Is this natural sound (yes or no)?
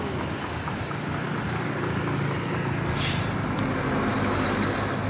yes